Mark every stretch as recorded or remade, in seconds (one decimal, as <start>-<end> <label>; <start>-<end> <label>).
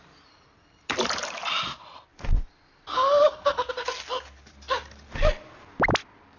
0.0-6.4 recorded